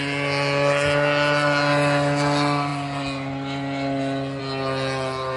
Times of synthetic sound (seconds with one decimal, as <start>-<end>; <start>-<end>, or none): none